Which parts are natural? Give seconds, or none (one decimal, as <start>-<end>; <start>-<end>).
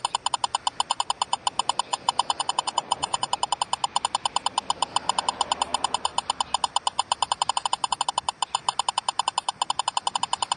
0.0-1.9; 3.3-10.6